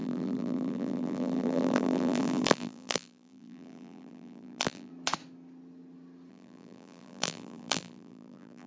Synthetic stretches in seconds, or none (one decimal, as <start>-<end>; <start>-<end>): 0.0-4.9; 6.3-8.7